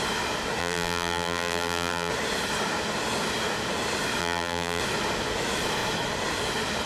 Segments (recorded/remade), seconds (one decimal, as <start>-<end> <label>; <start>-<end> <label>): 0.0-0.6 recorded; 0.6-2.1 remade; 2.1-4.2 recorded; 4.2-4.8 remade; 4.8-6.9 recorded